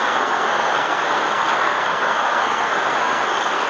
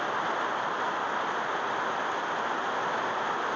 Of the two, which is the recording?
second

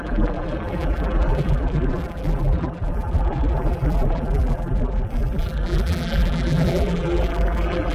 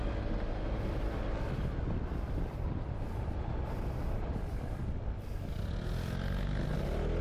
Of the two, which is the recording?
second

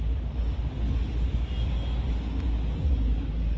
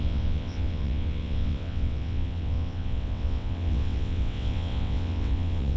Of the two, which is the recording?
first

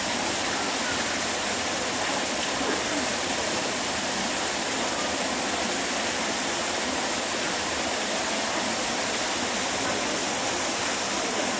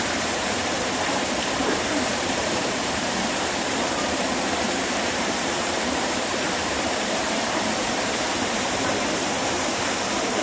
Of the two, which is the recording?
first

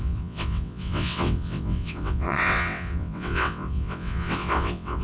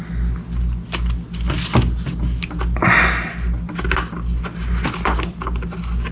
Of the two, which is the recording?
second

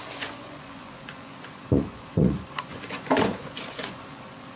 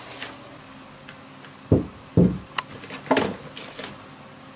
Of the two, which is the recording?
second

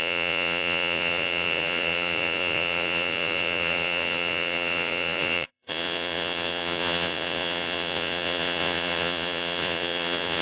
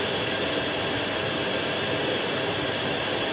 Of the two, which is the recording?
second